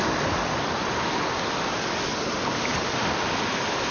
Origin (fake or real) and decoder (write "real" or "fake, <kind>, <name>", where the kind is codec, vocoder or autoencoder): real